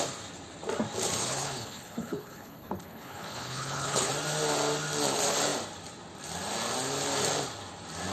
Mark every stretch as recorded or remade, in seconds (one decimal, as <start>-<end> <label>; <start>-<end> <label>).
0.0-1.2 recorded; 1.2-4.1 remade; 4.1-8.1 recorded